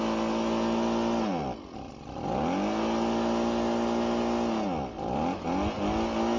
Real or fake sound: real